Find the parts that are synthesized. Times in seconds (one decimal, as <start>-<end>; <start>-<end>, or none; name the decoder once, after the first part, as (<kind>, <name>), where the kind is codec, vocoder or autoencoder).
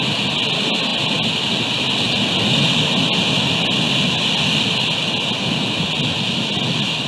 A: none